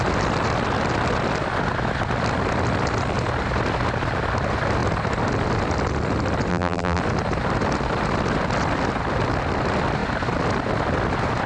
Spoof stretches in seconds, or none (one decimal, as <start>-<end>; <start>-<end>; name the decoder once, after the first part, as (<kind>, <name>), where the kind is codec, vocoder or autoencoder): 6.5-7.0 (vocoder, BigVGAN v2)

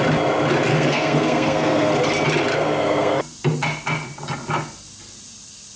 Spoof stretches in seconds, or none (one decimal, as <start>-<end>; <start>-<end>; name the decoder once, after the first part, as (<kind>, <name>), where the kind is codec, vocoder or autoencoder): 0.7-1.9 (codec, SNAC); 2.5-3.2

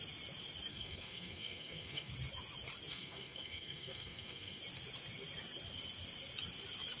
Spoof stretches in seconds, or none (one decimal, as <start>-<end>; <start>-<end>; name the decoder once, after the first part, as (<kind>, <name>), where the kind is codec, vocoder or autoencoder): 0.7-2.1 (codec, SNAC); 2.9-4.6

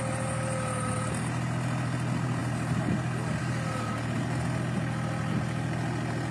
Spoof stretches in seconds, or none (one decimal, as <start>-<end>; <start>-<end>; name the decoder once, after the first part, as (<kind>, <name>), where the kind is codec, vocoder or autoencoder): none

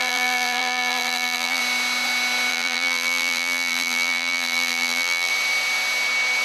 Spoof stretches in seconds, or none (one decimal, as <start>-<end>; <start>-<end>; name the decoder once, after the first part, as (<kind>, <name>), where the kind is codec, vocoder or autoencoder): 0.0-1.6 (vocoder, BigVGAN v2); 2.5-5.3

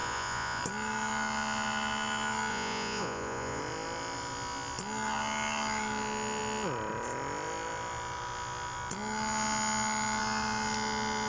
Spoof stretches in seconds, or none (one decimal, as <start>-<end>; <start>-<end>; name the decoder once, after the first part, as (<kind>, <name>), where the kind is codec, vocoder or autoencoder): 0.0-0.6 (vocoder, Vocos); 2.5-3.6

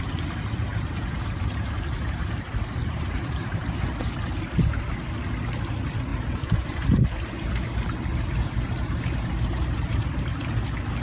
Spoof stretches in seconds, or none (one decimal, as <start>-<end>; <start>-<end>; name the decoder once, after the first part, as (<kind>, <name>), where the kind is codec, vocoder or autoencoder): 0.7-3.8 (vocoder, BigVGAN v2); 6.1-10.2